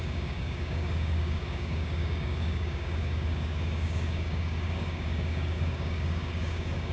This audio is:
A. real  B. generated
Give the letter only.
B